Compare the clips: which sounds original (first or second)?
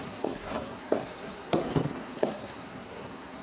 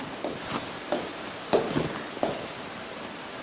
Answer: second